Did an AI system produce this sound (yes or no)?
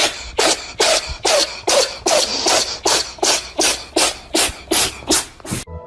no